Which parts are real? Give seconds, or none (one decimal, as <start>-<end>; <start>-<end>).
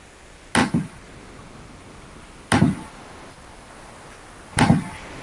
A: 0.0-5.2